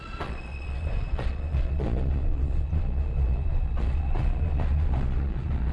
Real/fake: fake